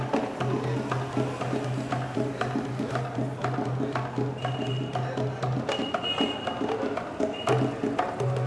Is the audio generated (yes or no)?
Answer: no